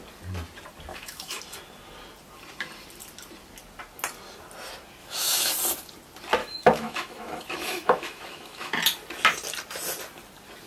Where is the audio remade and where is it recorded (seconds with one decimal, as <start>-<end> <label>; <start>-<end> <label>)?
0.0-0.9 recorded; 0.9-1.4 remade; 1.4-5.0 recorded; 5.0-5.5 remade; 5.5-6.4 recorded; 6.4-8.8 remade; 8.8-10.7 recorded